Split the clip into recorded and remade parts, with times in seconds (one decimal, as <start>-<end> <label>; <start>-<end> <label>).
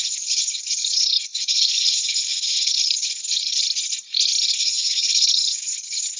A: 0.0-3.6 remade; 3.6-4.5 recorded; 4.5-6.2 remade